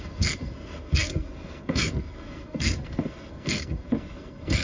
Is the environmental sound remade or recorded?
remade